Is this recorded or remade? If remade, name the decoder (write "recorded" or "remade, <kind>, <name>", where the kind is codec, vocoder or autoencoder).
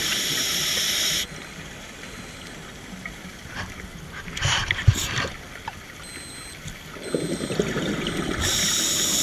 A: recorded